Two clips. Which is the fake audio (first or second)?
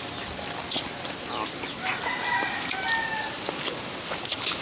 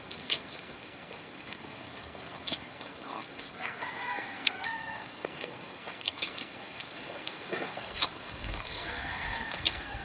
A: second